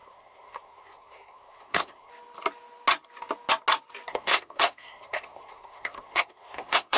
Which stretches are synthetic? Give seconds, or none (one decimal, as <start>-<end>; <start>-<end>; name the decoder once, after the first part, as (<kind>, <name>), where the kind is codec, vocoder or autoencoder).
0.0-2.1 (codec, SNAC); 4.1-7.0